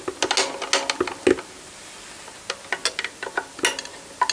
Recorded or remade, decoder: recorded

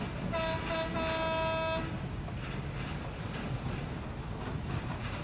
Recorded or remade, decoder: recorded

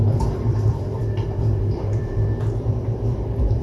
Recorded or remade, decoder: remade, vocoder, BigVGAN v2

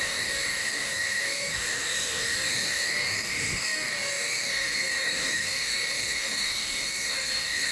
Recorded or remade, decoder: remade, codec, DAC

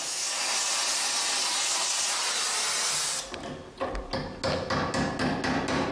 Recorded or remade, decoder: recorded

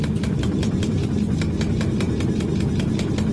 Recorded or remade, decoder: recorded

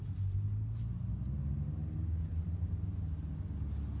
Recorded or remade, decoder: recorded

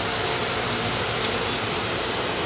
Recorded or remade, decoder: remade, vocoder, BigVGAN v2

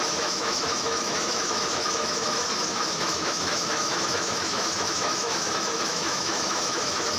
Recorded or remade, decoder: remade, autoencoder, DAC-VAE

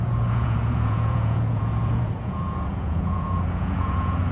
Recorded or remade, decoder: remade, vocoder, Vocos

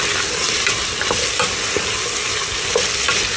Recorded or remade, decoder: recorded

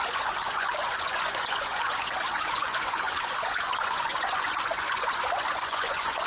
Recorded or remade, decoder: remade, vocoder, Vocos